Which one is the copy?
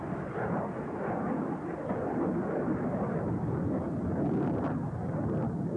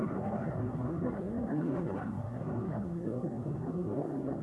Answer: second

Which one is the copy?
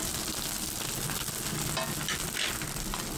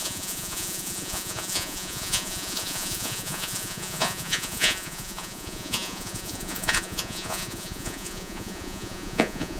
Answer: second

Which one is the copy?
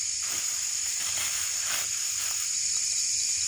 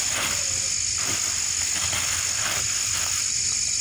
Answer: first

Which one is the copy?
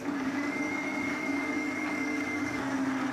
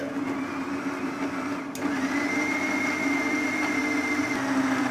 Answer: first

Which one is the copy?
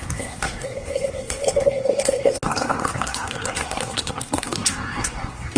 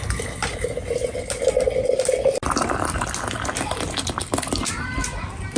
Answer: first